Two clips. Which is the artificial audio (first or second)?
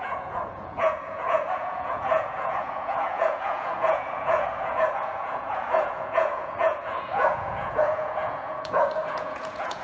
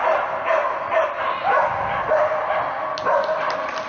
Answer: first